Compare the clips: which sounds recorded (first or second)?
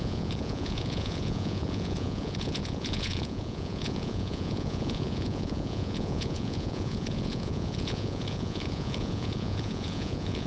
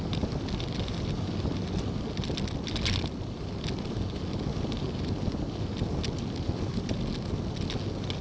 second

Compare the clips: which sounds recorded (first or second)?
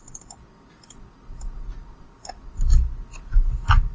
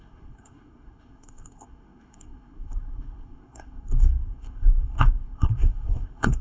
first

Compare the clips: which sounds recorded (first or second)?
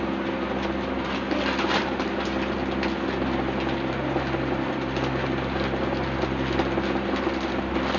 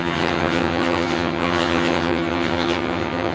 first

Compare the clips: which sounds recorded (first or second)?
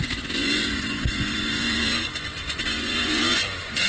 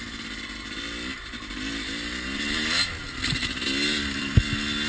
second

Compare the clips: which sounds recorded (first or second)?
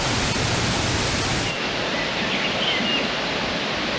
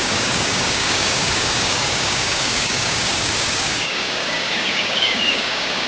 first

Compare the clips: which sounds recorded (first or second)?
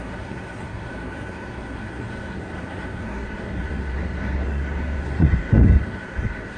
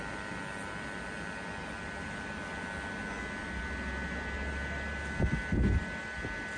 second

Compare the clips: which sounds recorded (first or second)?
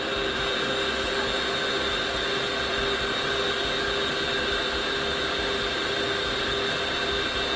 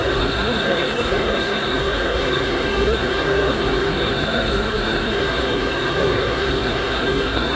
first